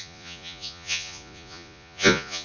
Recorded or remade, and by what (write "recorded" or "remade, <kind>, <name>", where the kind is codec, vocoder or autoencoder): remade, vocoder, Vocos